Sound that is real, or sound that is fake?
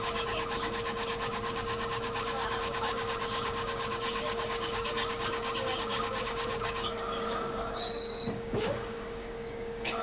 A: fake